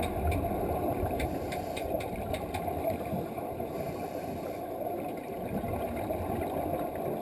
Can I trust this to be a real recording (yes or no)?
yes